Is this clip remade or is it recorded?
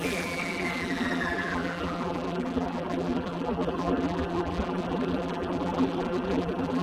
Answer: remade